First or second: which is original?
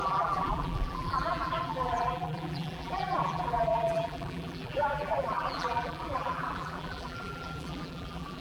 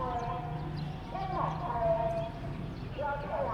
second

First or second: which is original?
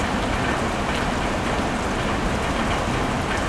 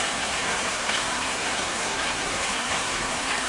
first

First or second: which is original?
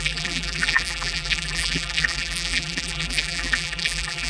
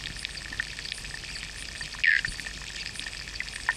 second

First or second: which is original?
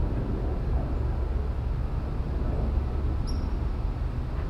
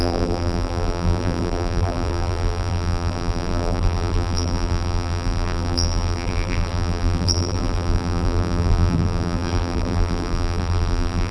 first